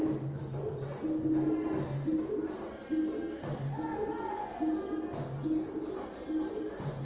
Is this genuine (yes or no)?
yes